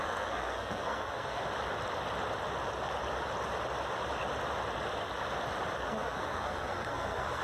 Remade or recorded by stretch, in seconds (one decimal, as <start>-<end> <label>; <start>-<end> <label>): 0.0-1.4 remade; 1.4-5.8 recorded; 5.8-7.4 remade